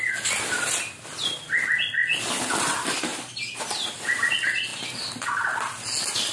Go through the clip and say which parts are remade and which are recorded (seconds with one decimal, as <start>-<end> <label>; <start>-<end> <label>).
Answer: 0.0-6.3 recorded